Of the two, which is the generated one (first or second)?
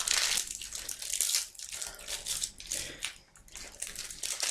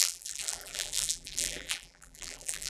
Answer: second